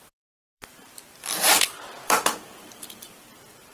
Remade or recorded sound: remade